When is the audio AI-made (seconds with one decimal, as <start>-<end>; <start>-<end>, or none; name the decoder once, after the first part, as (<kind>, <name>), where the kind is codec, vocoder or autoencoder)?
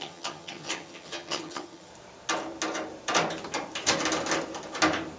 0.0-1.9 (vocoder, HiFi-GAN)